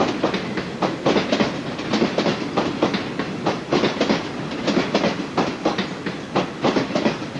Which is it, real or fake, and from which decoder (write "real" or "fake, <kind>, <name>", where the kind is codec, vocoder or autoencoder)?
real